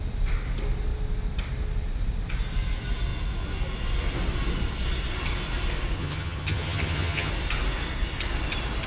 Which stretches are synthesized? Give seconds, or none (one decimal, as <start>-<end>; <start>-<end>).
6.0-7.3